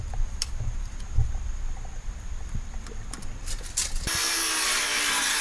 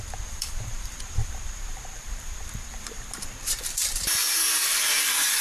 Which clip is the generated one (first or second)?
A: second